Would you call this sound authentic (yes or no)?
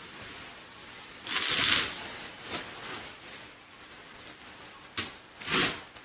yes